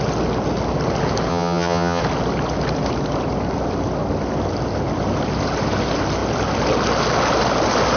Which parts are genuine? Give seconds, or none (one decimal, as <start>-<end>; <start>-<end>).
0.0-1.3; 2.0-8.0